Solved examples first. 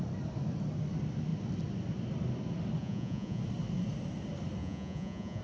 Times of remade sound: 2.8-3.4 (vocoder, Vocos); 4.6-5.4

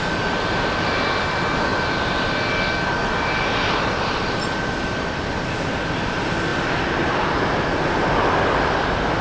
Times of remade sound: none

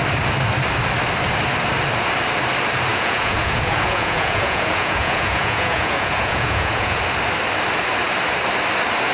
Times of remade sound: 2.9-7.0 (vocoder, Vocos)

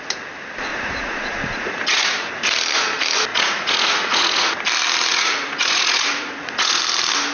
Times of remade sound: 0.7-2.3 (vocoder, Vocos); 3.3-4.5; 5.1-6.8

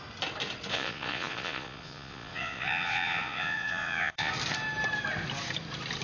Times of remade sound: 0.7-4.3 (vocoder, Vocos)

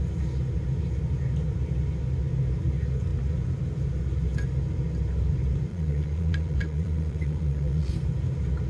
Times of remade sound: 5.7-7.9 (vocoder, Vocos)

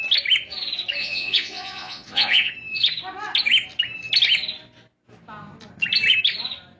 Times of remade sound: 1.0-2.5 (vocoder, Vocos)

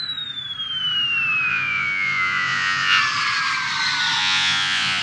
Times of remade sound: 1.5-3.0 (vocoder, Vocos); 4.2-5.0